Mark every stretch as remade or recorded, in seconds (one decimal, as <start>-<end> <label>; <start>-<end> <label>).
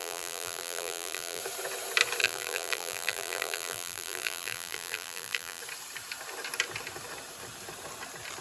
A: 0.0-1.4 remade; 1.4-2.2 recorded; 2.2-5.6 remade; 5.6-8.4 recorded